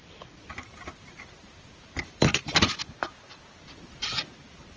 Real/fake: real